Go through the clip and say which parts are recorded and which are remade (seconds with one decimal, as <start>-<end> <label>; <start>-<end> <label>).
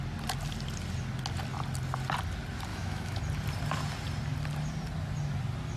0.0-2.7 recorded; 2.7-3.2 remade; 3.2-5.8 recorded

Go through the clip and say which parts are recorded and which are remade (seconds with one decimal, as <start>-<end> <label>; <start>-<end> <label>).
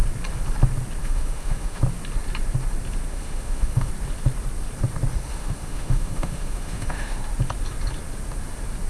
0.0-1.0 recorded; 1.0-1.8 remade; 1.8-3.1 recorded; 3.1-3.9 remade; 3.9-5.3 recorded; 5.3-7.2 remade; 7.2-8.9 recorded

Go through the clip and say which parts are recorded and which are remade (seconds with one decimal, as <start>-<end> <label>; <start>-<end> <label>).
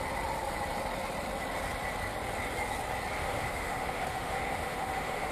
0.0-3.2 recorded; 3.2-5.3 remade